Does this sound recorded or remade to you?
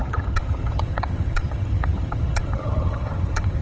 remade